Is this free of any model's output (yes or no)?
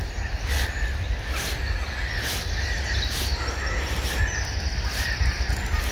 yes